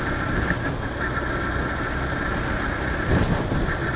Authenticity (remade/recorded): recorded